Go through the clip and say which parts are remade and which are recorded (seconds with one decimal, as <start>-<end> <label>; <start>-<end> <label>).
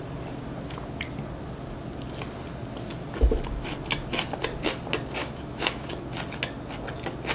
0.0-5.2 recorded; 5.2-6.0 remade; 6.0-7.3 recorded